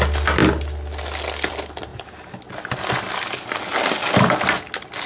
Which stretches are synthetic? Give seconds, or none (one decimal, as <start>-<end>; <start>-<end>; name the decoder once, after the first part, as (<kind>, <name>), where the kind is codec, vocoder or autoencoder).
none